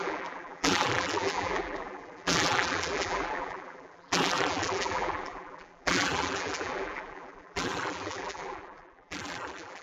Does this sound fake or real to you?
fake